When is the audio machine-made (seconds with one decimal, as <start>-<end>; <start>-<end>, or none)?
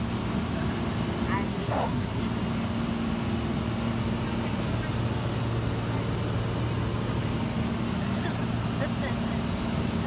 1.5-2.2